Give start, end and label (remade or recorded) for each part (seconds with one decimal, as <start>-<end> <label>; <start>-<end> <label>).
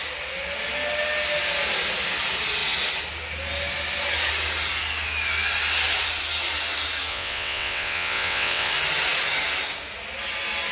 0.0-7.1 recorded; 7.1-8.7 remade; 8.7-10.7 recorded